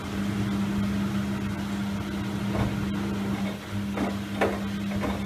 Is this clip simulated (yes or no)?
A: no